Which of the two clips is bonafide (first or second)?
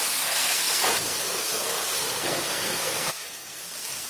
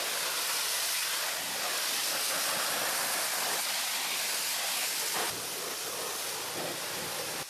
second